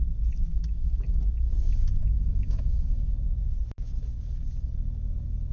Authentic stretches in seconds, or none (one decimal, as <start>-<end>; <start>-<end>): 0.0-0.5; 1.2-2.3; 3.1-5.5